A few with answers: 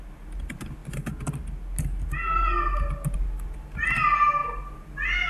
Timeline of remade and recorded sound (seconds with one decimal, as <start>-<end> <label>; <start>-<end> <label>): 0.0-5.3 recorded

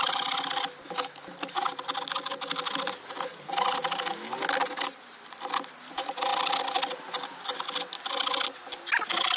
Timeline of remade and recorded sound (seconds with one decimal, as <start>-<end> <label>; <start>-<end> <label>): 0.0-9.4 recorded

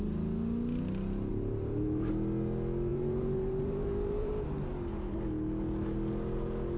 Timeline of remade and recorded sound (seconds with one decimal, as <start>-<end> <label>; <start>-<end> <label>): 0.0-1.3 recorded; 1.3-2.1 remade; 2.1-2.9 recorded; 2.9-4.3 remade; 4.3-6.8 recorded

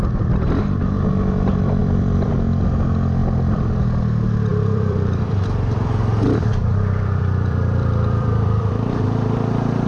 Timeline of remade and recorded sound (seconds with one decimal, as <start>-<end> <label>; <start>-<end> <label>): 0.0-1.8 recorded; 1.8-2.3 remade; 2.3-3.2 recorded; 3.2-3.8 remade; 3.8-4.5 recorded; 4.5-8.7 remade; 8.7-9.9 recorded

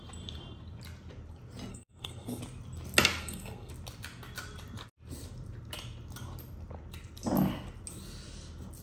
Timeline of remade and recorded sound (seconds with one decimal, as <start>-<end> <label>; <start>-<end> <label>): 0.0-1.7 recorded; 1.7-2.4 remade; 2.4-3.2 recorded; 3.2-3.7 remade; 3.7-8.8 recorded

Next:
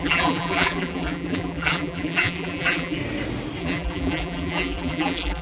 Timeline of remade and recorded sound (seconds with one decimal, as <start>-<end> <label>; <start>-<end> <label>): 0.0-3.0 remade; 3.0-3.6 recorded; 3.6-5.4 remade